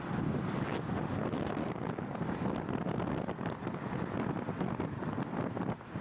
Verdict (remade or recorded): recorded